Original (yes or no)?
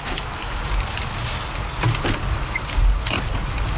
no